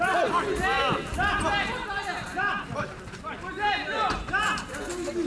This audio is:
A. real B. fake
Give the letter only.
A